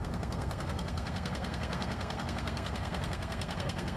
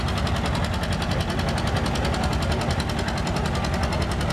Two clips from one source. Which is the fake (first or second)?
first